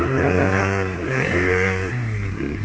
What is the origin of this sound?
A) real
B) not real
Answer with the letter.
B